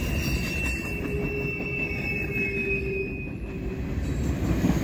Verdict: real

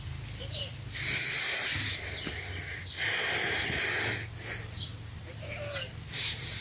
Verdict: real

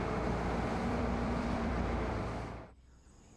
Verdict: fake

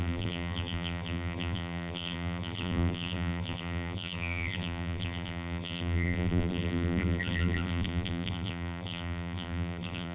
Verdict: fake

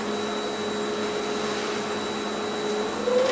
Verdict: real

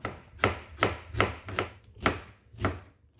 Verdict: real